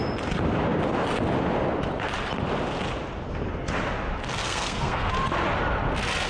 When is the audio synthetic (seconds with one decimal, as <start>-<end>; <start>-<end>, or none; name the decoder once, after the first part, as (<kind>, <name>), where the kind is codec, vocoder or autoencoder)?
4.4-5.1 (codec, SNAC)